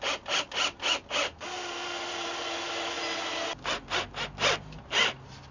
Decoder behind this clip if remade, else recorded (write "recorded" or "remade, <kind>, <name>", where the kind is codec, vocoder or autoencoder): recorded